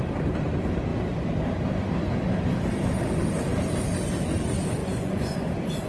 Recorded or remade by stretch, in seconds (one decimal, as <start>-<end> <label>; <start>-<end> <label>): 0.0-4.8 recorded; 4.8-5.5 remade; 5.5-5.9 recorded